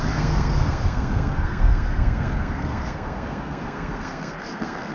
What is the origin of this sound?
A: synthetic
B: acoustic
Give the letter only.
A